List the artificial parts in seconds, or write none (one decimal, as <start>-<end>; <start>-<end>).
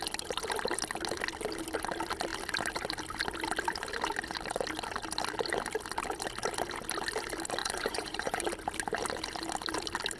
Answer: 7.6-8.4